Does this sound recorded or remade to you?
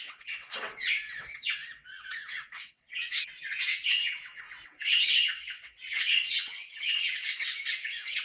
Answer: remade